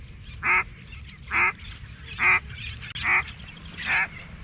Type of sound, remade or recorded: recorded